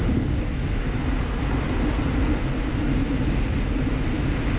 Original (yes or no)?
yes